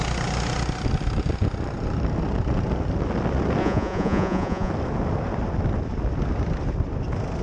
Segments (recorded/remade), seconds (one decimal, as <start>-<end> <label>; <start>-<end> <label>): 0.0-3.6 recorded; 3.6-4.7 remade; 4.7-7.4 recorded